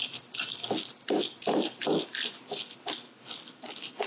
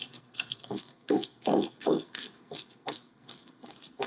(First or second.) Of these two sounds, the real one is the first